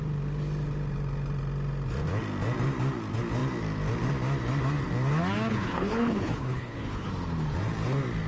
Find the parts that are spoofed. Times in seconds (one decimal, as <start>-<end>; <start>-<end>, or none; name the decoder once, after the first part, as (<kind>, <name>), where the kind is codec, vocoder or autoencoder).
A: 5.5-7.1 (codec, HILCodec)

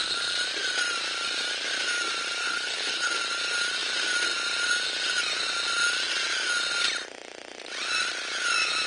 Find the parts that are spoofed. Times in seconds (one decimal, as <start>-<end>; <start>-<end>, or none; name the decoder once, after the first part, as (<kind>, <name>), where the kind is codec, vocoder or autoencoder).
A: 2.4-3.1 (codec, HILCodec)